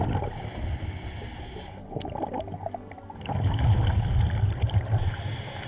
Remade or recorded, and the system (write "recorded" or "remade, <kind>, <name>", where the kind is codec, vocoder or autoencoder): recorded